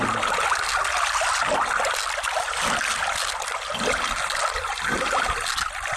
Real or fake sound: real